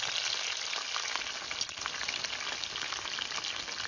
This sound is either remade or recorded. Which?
recorded